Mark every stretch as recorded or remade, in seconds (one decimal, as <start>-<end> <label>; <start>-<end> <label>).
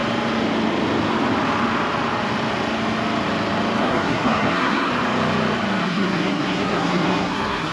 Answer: 0.0-3.8 recorded; 3.8-4.9 remade; 4.9-5.8 recorded; 5.8-7.7 remade